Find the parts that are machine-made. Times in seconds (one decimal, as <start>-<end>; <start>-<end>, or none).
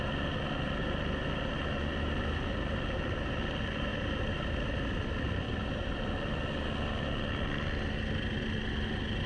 none